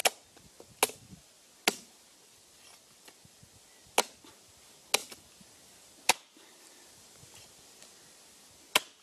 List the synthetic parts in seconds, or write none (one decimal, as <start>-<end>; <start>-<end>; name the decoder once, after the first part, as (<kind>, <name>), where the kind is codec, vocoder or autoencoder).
none